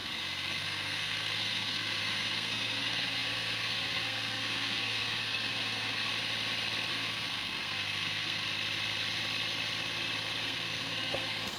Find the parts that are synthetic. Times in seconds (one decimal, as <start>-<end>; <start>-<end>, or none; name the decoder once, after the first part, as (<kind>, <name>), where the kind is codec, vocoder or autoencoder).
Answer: 0.0-6.1 (codec, SNAC); 6.9-8.4; 10.4-11.6

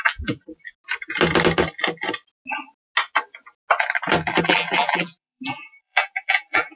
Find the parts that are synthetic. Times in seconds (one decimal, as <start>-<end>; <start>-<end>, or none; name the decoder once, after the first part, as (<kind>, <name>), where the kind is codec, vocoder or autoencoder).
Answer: 0.0-0.5 (vocoder, BigVGAN v2); 4.4-6.8